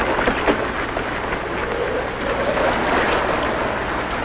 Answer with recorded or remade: recorded